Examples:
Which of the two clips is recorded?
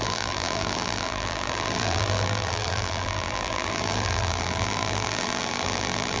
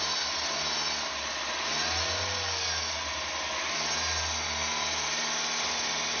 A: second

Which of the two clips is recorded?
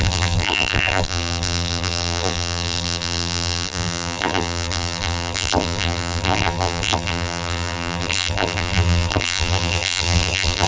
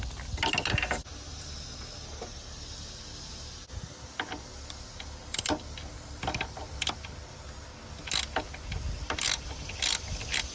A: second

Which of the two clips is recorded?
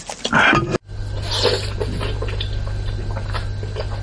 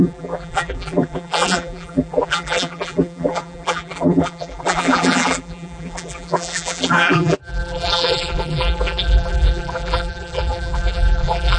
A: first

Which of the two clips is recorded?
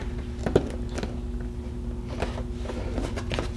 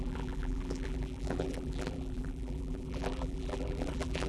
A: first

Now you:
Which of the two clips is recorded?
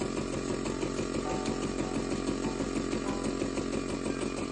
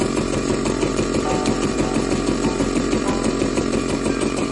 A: first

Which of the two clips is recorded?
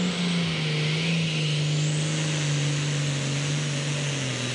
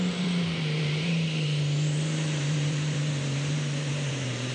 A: first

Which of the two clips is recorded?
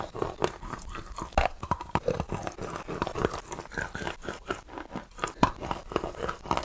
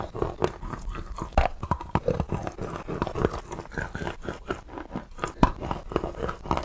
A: second